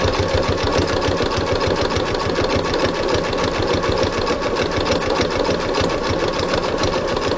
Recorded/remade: recorded